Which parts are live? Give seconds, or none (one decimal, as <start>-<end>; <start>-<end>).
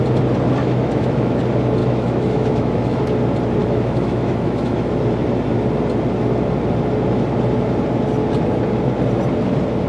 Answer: 0.0-0.6; 1.4-1.8; 3.0-3.6; 4.9-9.9